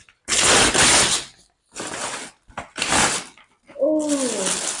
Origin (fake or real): real